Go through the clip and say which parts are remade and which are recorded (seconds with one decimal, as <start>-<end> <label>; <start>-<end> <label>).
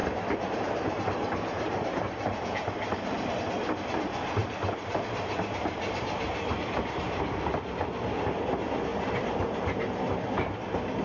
0.0-3.3 remade; 3.3-4.4 recorded; 4.4-6.8 remade; 6.8-11.0 recorded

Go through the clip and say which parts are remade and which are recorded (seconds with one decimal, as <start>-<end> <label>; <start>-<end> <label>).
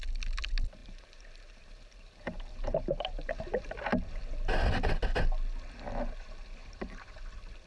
0.0-0.8 recorded; 0.8-3.8 remade; 3.8-6.6 recorded; 6.6-7.2 remade; 7.2-7.7 recorded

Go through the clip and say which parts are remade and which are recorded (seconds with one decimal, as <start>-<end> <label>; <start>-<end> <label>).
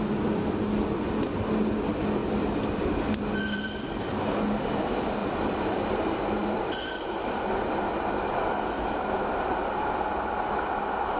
0.0-2.2 recorded; 2.2-4.2 remade; 4.2-5.2 recorded; 5.2-5.9 remade; 5.9-6.4 recorded; 6.4-9.5 remade; 9.5-11.2 recorded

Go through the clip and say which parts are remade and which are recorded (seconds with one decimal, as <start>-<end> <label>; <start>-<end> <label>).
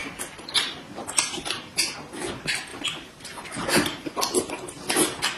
0.0-2.7 recorded; 2.7-4.4 remade; 4.4-5.4 recorded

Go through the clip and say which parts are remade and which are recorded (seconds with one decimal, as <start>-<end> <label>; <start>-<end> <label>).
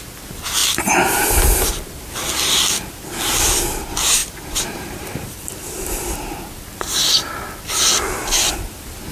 0.0-0.6 recorded; 0.6-1.6 remade; 1.6-4.2 recorded; 4.2-5.8 remade; 5.8-9.1 recorded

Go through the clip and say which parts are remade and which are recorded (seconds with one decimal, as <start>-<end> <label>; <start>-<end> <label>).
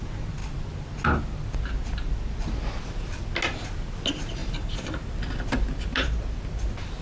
0.0-4.4 recorded; 4.4-5.1 remade; 5.1-7.0 recorded